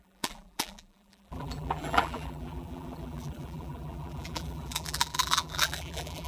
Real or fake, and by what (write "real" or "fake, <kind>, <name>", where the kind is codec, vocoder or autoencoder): fake, vocoder, BigVGAN v2